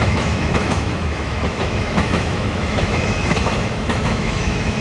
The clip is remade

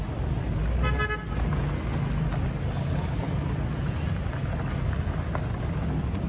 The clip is recorded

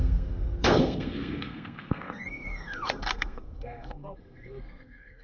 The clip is remade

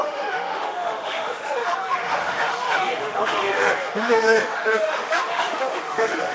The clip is remade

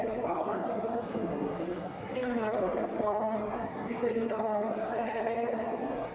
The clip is remade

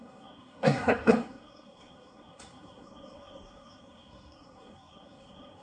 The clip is remade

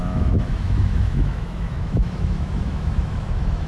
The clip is remade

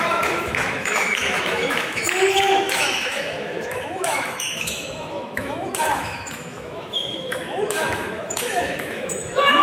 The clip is remade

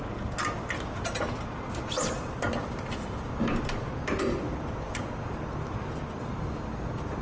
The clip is recorded